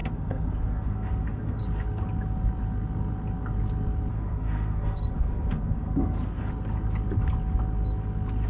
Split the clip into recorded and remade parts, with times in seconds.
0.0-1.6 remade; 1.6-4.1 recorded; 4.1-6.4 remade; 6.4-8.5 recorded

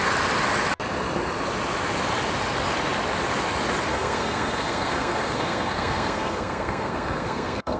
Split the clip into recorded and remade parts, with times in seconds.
0.0-3.9 recorded; 3.9-7.8 remade